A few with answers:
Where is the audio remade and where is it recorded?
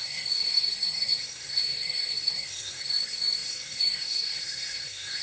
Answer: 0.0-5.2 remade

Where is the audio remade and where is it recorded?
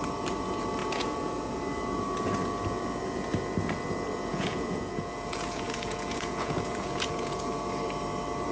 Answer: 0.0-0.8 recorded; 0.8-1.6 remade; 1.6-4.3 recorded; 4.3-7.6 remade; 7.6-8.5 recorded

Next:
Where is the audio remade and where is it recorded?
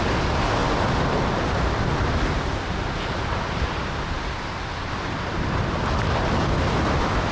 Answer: 0.0-7.3 recorded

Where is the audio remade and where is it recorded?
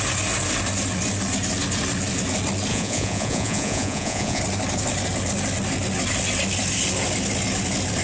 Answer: 0.0-2.7 recorded; 2.7-4.4 remade; 4.4-8.0 recorded